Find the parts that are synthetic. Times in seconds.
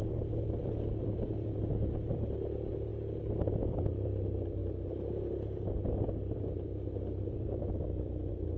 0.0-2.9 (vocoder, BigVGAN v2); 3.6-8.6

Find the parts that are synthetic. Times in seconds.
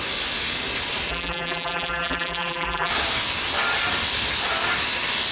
1.1-2.9 (vocoder, BigVGAN v2)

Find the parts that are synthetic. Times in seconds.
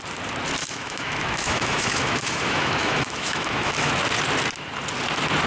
0.6-3.9 (autoencoder, DAC-VAE)